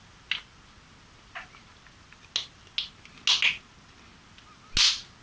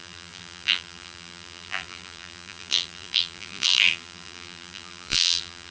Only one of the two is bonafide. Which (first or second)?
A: first